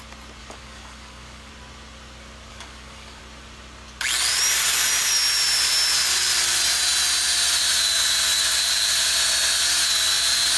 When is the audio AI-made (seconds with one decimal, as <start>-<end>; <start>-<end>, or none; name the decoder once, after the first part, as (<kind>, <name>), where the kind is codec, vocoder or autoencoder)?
0.4-1.5 (codec, DAC); 2.5-3.2